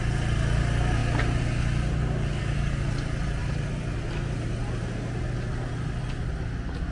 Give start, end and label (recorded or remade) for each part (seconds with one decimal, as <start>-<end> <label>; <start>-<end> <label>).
0.0-6.9 recorded